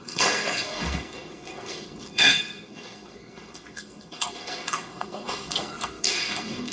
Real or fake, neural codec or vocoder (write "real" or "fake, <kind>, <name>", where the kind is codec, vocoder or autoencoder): fake, codec, SNAC